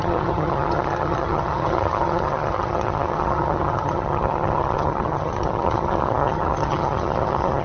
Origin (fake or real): fake